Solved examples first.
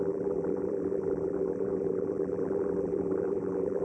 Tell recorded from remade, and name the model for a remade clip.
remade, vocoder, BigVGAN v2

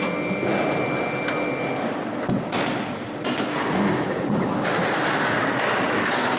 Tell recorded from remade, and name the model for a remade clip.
recorded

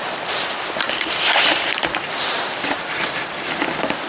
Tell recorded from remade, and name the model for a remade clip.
remade, vocoder, BigVGAN v2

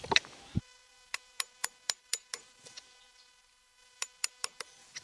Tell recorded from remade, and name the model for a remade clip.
remade, vocoder, BigVGAN v2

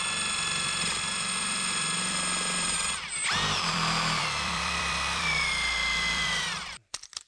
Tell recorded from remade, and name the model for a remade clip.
remade, vocoder, BigVGAN v2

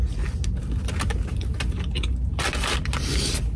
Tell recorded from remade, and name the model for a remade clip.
recorded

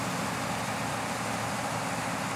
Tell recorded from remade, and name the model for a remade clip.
recorded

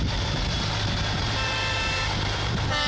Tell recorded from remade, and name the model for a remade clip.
remade, vocoder, BigVGAN v2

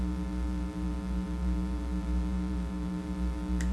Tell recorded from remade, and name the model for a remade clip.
remade, vocoder, BigVGAN v2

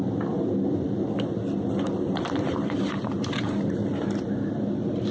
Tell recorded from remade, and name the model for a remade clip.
remade, vocoder, BigVGAN v2